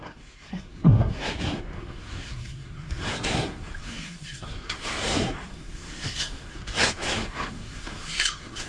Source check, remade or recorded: remade